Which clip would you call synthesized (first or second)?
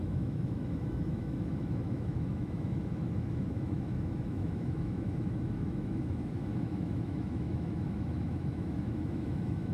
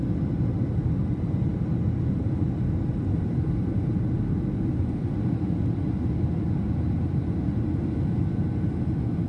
first